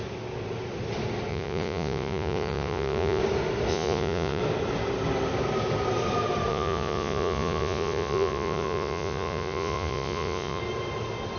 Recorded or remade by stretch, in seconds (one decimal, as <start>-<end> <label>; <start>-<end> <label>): 0.0-1.3 recorded; 1.3-3.2 remade; 3.2-3.7 recorded; 3.7-4.4 remade; 4.4-6.5 recorded; 6.5-10.6 remade; 10.6-11.4 recorded